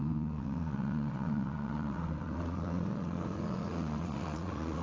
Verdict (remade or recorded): remade